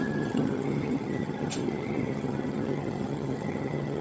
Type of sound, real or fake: fake